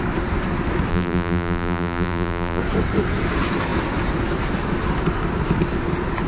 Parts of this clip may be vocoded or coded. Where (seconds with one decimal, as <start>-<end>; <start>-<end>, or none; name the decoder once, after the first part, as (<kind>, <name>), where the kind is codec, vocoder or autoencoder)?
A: 0.9-2.6 (vocoder, BigVGAN v2)